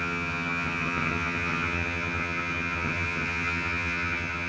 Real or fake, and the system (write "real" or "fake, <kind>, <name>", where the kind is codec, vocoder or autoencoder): fake, vocoder, HiFi-GAN